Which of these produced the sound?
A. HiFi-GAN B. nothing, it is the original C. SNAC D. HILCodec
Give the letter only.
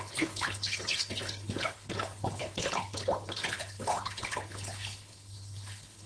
D